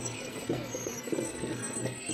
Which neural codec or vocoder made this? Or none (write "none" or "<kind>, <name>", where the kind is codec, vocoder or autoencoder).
codec, SNAC